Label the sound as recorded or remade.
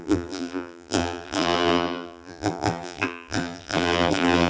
remade